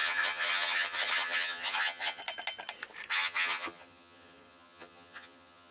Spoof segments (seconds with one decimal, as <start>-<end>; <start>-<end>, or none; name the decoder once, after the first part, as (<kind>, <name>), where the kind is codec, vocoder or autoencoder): 0.0-2.2 (vocoder, HiFi-GAN); 3.1-5.7